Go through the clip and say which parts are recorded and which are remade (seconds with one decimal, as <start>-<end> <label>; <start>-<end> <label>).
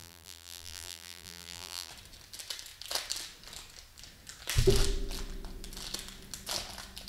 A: 0.0-1.9 remade; 1.9-7.1 recorded